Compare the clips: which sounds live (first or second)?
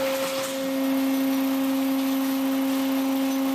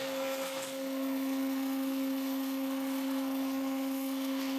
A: first